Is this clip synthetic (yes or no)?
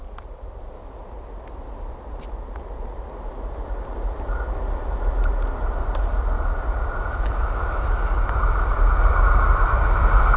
no